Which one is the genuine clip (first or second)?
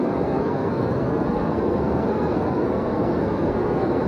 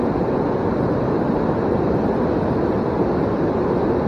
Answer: second